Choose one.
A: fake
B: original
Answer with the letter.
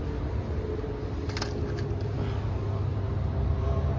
B